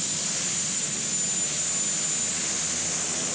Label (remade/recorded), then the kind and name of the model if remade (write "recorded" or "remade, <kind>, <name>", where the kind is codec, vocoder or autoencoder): recorded